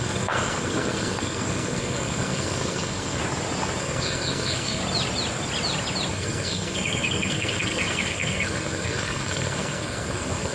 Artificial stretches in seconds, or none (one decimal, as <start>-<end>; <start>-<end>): 0.0-3.2; 3.8-4.8; 6.1-10.5